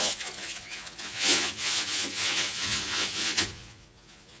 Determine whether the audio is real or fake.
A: fake